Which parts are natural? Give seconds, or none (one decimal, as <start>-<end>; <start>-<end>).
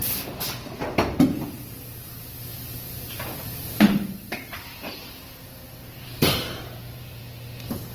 0.0-2.5; 7.2-7.9